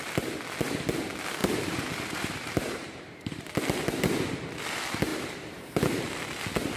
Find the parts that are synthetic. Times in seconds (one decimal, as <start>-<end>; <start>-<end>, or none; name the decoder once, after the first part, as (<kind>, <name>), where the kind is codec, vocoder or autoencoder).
1.4-3.4 (vocoder, BigVGAN v2); 5.1-6.1